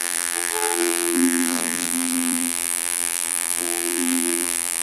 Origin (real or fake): fake